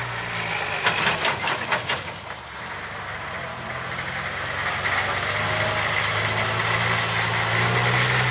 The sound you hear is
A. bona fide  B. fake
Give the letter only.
A